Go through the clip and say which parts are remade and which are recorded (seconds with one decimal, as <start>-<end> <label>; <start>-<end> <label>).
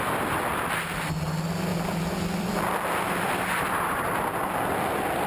0.0-1.7 recorded; 1.7-2.6 remade; 2.6-5.3 recorded